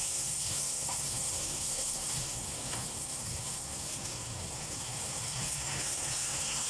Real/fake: fake